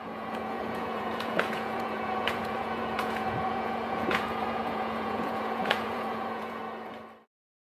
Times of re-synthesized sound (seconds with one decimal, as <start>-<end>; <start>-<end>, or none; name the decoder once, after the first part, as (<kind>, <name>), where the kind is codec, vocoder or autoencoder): 0.0-6.6 (vocoder, Vocos); 7.2-7.7